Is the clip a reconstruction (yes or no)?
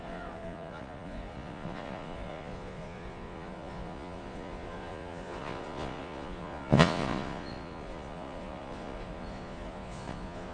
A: yes